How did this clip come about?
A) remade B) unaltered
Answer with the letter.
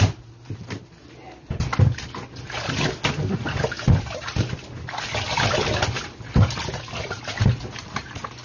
B